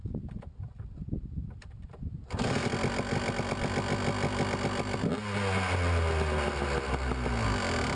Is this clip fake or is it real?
real